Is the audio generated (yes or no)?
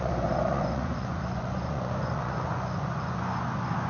yes